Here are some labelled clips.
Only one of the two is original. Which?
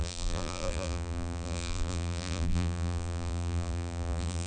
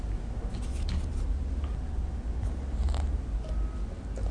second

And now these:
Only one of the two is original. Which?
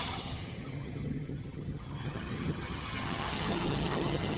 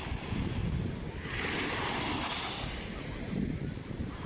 second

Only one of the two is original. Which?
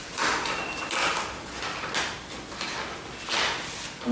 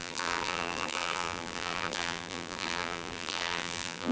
first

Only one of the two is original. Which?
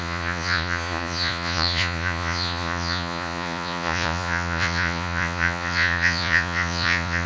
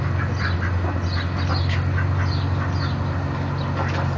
second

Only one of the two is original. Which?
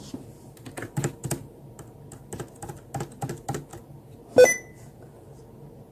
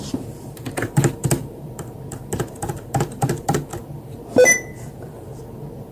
first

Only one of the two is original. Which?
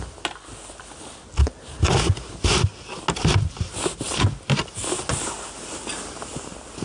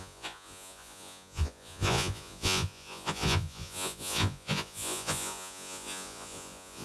first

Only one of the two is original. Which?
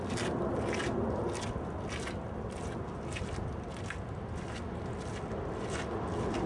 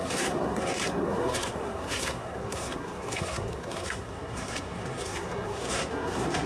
first